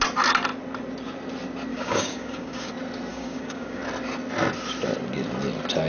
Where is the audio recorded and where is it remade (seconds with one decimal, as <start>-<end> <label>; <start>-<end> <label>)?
0.0-1.7 recorded; 1.7-2.7 remade; 2.7-3.1 recorded; 3.1-3.8 remade; 3.8-5.9 recorded